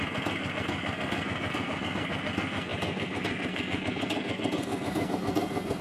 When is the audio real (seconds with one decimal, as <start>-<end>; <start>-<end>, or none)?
none